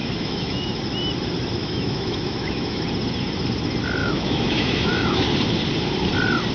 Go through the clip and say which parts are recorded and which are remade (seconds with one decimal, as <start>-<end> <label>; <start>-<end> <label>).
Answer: 0.0-0.8 remade; 0.8-1.6 recorded; 1.6-2.8 remade; 2.8-4.0 recorded; 4.0-5.2 remade; 5.2-6.5 recorded